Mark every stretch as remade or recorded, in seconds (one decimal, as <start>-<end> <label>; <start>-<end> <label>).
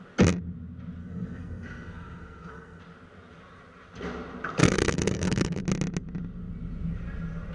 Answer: 0.0-1.0 recorded; 1.0-2.8 remade; 2.8-4.6 recorded; 4.6-5.6 remade; 5.6-7.5 recorded